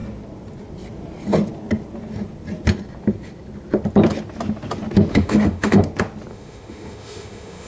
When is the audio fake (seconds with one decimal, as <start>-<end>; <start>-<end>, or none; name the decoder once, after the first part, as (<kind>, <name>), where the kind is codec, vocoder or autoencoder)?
5.1-5.8 (autoencoder, DAC-VAE); 6.3-7.7